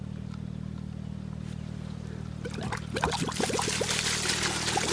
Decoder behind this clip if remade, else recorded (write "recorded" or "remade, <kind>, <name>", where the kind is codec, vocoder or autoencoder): recorded